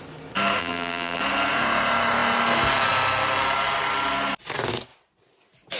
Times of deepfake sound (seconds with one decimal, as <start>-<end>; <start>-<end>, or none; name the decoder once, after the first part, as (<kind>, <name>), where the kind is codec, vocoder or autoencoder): 0.6-1.2 (vocoder, BigVGAN v2)